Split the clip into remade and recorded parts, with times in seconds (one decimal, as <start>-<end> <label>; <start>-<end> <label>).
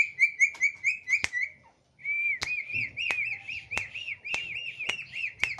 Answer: 0.0-5.6 recorded